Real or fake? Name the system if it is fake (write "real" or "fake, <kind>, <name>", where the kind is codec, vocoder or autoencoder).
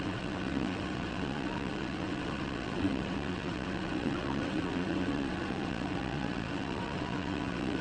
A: fake, vocoder, WaveNeXt